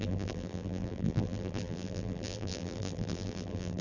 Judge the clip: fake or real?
fake